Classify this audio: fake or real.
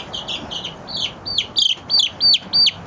real